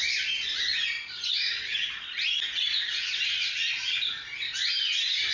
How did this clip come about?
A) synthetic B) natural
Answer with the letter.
B